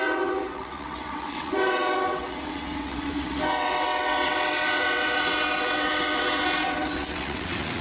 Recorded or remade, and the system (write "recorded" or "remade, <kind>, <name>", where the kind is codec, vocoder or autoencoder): remade, vocoder, WaveNeXt